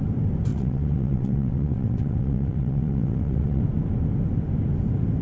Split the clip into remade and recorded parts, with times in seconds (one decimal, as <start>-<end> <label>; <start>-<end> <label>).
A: 0.0-0.5 recorded; 0.5-3.6 remade; 3.6-5.2 recorded